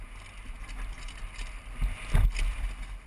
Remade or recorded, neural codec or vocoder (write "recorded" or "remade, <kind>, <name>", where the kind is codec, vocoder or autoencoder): recorded